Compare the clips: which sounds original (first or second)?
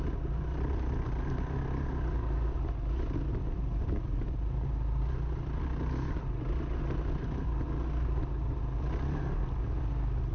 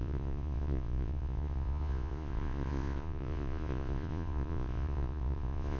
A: first